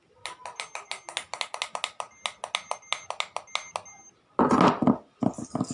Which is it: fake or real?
real